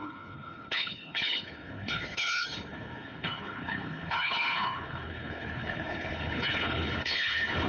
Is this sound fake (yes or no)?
yes